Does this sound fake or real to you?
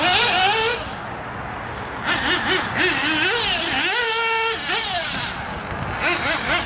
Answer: real